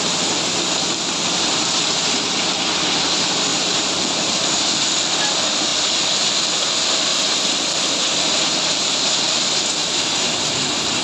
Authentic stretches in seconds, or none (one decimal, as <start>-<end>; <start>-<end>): 0.0-3.5; 4.8-7.1; 9.0-9.8

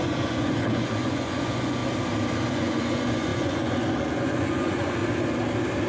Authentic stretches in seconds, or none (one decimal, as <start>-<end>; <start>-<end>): 1.8-2.5; 5.0-5.9

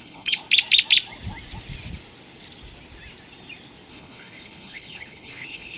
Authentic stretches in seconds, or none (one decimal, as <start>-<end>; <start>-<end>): 0.4-3.9

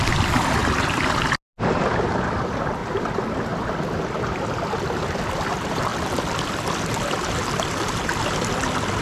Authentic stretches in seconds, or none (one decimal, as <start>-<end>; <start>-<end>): 0.6-1.6; 2.8-5.3; 5.9-6.6

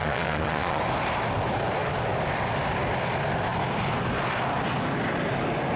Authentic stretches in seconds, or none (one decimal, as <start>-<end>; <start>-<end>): 0.8-5.8

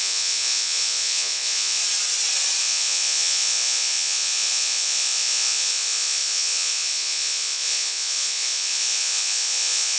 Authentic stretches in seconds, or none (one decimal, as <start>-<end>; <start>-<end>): 1.8-2.6

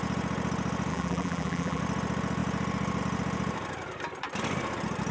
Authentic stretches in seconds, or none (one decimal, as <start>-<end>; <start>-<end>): 0.0-0.9; 1.8-5.1